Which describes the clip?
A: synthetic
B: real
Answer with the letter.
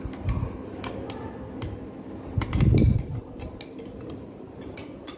B